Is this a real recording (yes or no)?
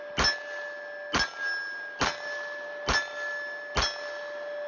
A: yes